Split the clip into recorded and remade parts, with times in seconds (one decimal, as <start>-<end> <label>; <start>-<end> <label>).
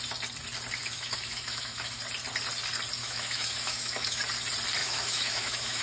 0.0-0.8 recorded; 0.8-2.0 remade; 2.0-3.0 recorded; 3.0-4.2 remade; 4.2-4.8 recorded; 4.8-5.8 remade